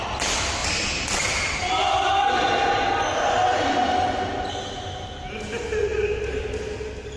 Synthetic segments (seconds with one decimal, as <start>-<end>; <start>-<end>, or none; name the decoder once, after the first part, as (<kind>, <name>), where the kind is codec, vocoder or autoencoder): none